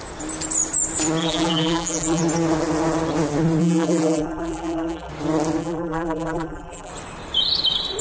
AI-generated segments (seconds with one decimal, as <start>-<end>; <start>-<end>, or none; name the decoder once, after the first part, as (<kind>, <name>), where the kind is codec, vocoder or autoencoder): 1.2-2.2 (vocoder, BigVGAN v2); 3.6-5.1; 5.6-6.9